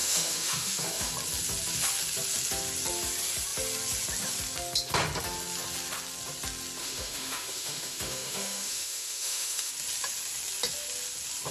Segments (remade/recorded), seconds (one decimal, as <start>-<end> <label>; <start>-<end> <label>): 0.0-1.1 remade; 1.1-6.8 recorded; 6.8-9.7 remade; 9.7-11.5 recorded